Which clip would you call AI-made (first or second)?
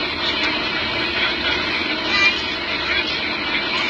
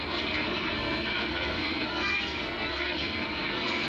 second